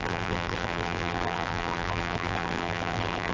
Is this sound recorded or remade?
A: remade